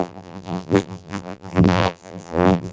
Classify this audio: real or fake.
fake